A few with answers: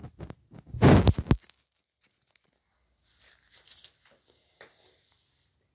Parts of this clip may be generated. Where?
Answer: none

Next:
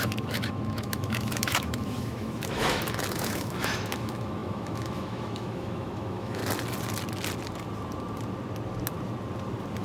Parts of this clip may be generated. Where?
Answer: 0.0-6.4 (autoencoder, DAC-VAE)

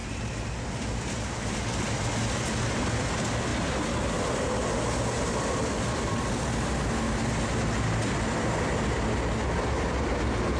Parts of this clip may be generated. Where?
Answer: none

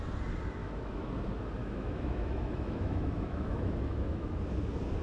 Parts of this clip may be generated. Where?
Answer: 0.6-1.1 (autoencoder, DAC-VAE); 1.6-4.4

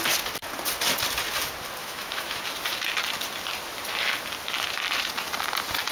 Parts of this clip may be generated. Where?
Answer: 1.8-2.4 (autoencoder, DAC-VAE)